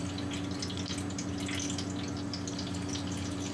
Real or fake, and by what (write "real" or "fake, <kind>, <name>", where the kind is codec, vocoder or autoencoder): real